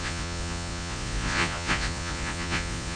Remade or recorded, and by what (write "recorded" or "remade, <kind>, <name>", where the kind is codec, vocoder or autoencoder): remade, vocoder, Vocos